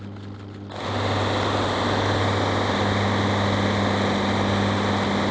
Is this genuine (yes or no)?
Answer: yes